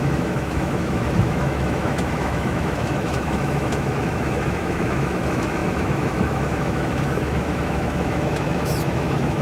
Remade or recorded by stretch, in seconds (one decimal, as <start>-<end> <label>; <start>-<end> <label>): 0.0-9.4 remade